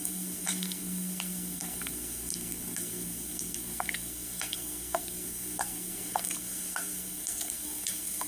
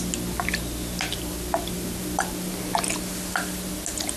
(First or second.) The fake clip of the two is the first